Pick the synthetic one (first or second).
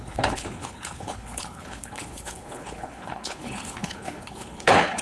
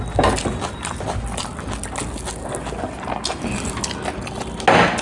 first